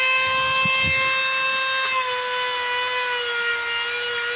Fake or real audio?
real